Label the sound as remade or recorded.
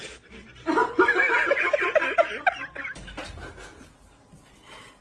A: recorded